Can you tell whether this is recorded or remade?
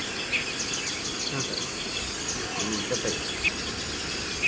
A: recorded